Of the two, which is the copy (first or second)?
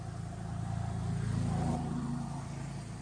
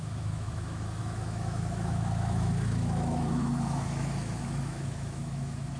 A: second